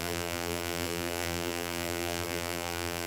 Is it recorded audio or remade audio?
remade